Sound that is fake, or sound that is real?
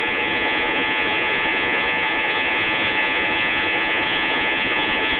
fake